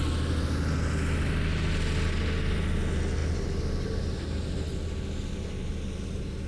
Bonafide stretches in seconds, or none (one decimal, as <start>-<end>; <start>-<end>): 0.0-6.5